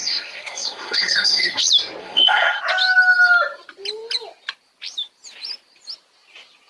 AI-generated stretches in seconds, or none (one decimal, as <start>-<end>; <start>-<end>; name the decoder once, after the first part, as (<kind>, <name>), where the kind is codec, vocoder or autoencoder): 0.0-1.6 (codec, SNAC); 2.0-2.6

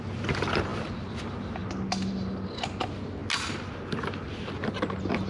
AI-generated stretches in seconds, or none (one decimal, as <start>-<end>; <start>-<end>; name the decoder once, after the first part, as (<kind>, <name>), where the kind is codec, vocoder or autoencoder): none